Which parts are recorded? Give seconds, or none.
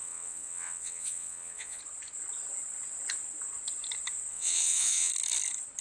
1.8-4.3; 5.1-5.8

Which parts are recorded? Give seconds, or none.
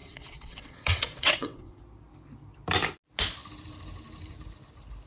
1.8-5.1